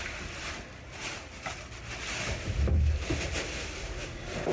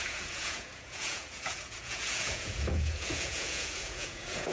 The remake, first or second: second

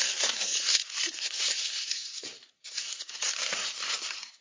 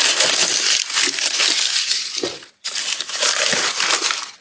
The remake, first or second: first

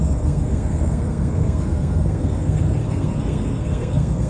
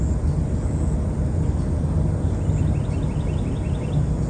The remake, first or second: first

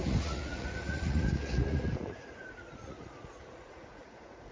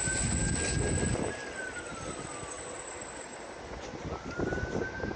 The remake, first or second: first